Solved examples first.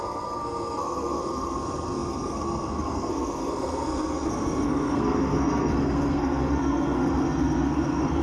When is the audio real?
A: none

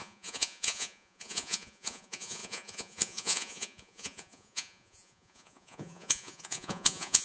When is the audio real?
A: none

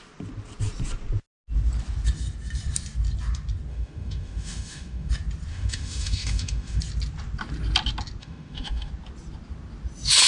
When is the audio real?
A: 0.0-3.7; 5.1-5.5; 6.8-8.2; 8.9-10.3

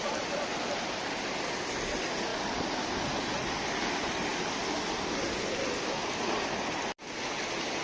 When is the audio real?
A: 0.0-7.8

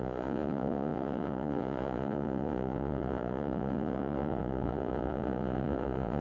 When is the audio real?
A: none

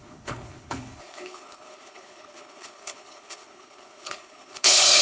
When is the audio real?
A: none

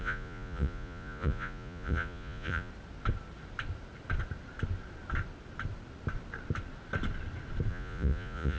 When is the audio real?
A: 2.7-7.7